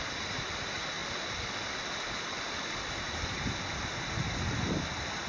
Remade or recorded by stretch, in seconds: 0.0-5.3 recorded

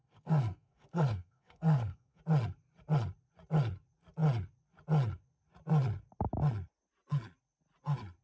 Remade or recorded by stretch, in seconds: 0.0-2.2 remade; 2.2-8.2 recorded

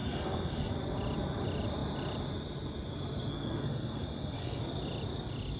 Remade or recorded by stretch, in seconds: 0.0-0.7 remade; 0.7-3.3 recorded; 3.3-4.6 remade; 4.6-5.6 recorded

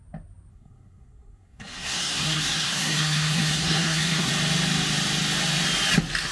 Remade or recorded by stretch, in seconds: 0.0-0.5 recorded; 0.5-4.3 remade; 4.3-6.3 recorded

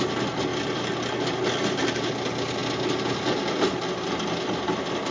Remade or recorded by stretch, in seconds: 0.0-5.1 recorded